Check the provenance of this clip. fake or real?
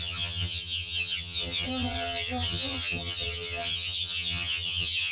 fake